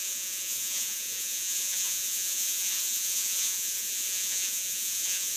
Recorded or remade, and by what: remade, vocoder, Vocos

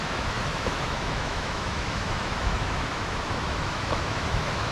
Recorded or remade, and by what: remade, autoencoder, DAC-VAE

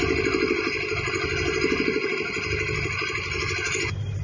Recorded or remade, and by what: recorded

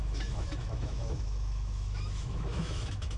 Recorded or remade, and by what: remade, autoencoder, DAC-VAE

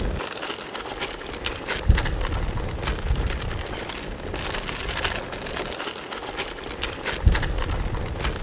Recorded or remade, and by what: recorded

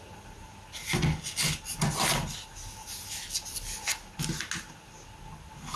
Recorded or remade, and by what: recorded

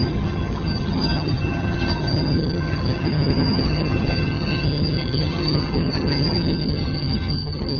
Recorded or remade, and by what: remade, vocoder, HiFi-GAN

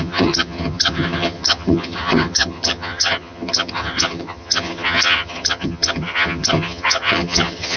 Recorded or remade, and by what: remade, vocoder, HiFi-GAN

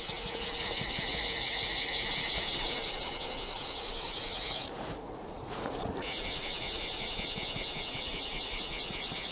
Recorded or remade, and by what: remade, vocoder, Vocos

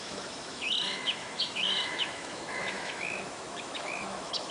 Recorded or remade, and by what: remade, autoencoder, DAC-VAE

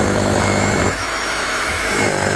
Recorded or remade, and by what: remade, autoencoder, DAC-VAE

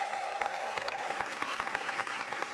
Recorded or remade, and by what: remade, codec, SNAC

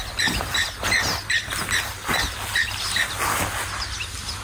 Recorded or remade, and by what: recorded